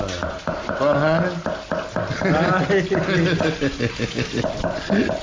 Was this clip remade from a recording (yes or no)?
no